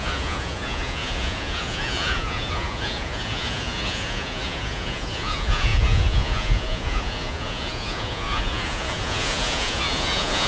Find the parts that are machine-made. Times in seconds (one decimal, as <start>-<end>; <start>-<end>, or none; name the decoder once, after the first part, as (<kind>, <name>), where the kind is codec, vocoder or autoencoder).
0.0-10.5 (vocoder, Vocos)